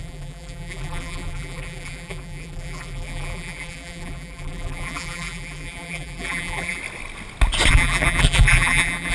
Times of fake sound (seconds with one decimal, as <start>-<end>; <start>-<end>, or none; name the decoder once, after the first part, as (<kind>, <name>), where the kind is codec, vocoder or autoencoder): 0.0-6.8 (vocoder, BigVGAN v2); 7.7-9.1